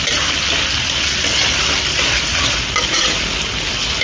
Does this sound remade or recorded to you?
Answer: recorded